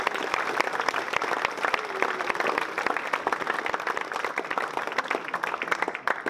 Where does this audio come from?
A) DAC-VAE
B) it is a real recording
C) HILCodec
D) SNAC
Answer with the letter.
B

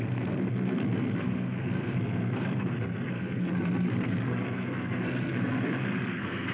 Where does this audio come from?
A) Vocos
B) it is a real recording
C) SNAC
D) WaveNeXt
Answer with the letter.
C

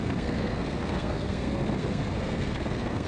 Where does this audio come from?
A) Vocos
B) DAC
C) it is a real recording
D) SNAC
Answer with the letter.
D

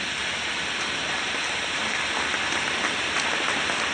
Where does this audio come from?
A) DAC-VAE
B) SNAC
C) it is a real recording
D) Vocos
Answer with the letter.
C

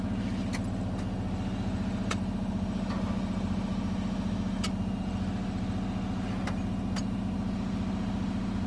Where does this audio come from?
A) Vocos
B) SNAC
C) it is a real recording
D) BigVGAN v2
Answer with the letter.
C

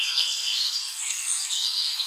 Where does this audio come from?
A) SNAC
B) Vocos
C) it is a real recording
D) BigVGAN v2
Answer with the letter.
A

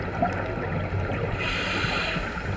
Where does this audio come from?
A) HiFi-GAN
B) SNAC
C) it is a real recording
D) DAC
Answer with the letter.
C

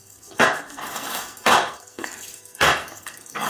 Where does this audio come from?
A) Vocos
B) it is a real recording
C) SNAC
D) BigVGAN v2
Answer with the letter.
C